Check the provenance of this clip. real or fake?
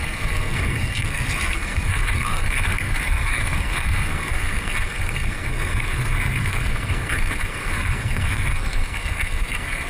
fake